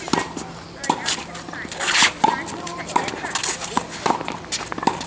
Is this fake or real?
real